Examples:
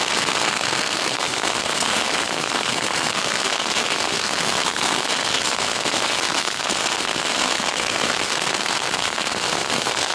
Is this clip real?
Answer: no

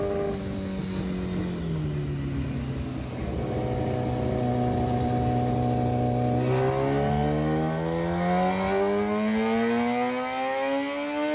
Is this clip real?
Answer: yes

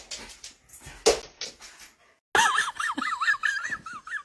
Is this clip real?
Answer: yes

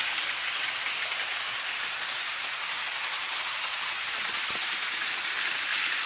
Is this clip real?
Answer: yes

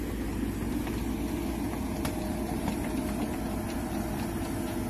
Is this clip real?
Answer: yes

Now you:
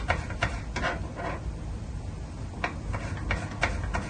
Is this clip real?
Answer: yes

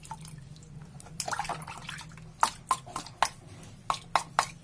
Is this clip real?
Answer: yes